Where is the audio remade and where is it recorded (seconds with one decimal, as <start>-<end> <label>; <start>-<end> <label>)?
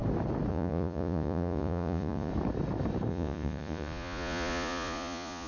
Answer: 0.0-0.5 recorded; 0.5-2.3 remade; 2.3-3.1 recorded; 3.1-5.5 remade